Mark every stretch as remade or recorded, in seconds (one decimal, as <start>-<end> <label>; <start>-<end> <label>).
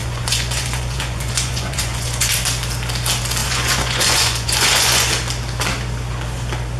0.0-2.3 remade; 2.3-3.4 recorded; 3.4-5.1 remade; 5.1-6.8 recorded